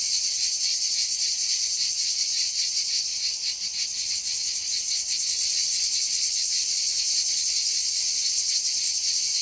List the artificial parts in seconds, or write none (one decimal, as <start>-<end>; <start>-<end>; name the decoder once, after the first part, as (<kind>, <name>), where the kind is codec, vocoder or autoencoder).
0.0-0.7 (vocoder, WaveNeXt); 1.9-9.4

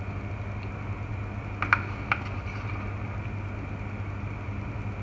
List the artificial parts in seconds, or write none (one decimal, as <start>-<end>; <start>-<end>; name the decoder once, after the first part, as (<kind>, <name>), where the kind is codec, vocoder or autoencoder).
none